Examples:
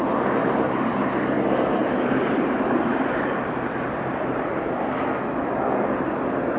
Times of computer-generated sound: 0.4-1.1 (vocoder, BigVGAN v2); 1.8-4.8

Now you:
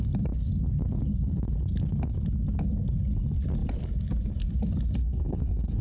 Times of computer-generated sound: 5.0-5.8 (codec, SNAC)

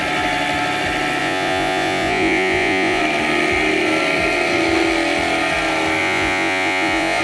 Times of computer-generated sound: 1.2-3.0 (vocoder, Vocos); 6.0-7.2

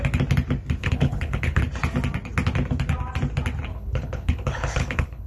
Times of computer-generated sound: 0.8-1.6 (codec, HILCodec); 3.7-5.3